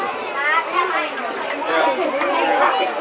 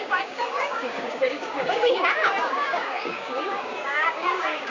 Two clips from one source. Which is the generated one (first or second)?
second